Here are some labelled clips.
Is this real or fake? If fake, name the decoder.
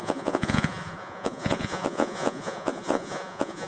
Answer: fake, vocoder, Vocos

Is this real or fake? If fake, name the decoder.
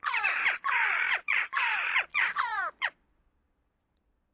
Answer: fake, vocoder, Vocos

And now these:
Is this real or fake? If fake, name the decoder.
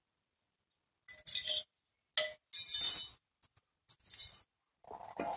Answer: real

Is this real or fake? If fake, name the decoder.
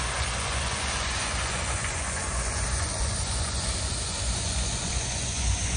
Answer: fake, vocoder, Vocos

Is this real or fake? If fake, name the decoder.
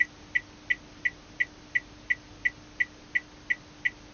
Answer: real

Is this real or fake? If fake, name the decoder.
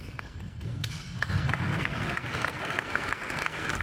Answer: fake, codec, SNAC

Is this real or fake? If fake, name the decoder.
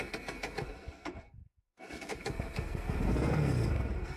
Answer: fake, codec, SNAC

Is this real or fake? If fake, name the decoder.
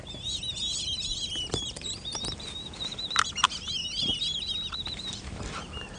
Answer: fake, vocoder, BigVGAN v2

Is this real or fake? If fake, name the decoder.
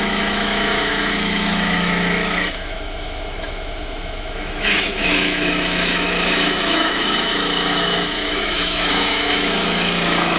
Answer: fake, autoencoder, DAC-VAE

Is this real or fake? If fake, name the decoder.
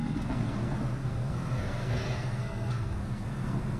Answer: fake, codec, SNAC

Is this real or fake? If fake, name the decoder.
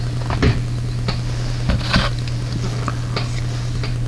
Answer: real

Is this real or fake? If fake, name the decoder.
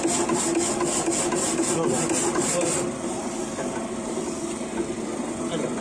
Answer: real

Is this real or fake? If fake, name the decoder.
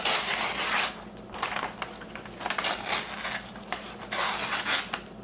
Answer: real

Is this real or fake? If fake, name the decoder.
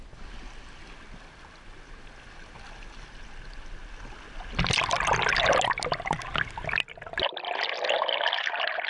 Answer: real